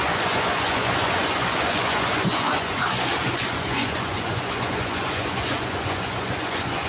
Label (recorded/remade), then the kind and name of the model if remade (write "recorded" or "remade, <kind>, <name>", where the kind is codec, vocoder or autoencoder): remade, vocoder, Vocos